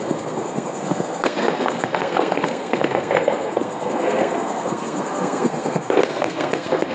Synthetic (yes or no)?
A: yes